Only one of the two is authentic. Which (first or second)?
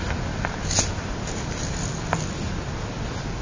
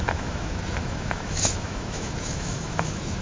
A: first